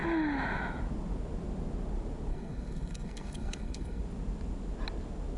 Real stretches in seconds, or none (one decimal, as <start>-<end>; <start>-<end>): 0.0-2.3; 4.0-5.4